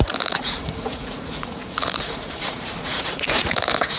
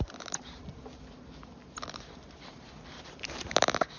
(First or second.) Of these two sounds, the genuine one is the second